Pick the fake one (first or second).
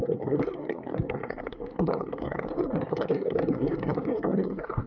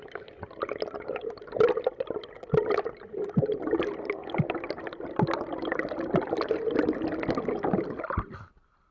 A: first